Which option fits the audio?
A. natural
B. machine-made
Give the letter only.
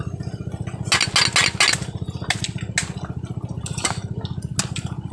A